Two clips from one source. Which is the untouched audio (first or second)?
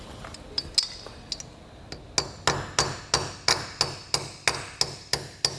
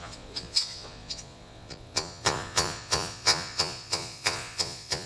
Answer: first